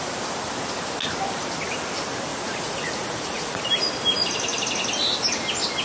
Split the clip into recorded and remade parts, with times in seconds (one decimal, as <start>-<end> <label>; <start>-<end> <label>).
0.0-2.3 recorded; 2.3-3.6 remade; 3.6-5.8 recorded